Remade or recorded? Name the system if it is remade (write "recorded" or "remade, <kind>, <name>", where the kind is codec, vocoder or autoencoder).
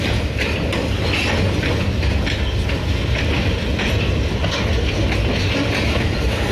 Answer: recorded